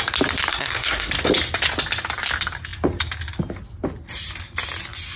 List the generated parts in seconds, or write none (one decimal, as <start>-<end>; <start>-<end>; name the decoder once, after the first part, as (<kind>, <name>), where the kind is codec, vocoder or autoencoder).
0.5-1.1 (codec, SNAC)